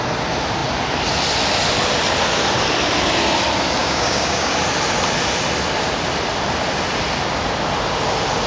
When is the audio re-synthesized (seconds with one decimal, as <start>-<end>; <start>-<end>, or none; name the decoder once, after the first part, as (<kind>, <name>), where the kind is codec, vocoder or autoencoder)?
3.8-4.5 (codec, DAC)